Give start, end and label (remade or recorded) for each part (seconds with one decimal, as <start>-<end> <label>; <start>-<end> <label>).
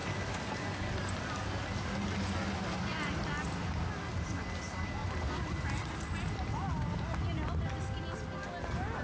0.0-9.0 recorded